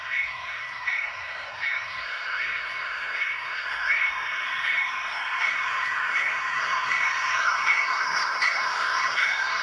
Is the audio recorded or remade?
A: remade